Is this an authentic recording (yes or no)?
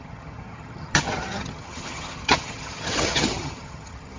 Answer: no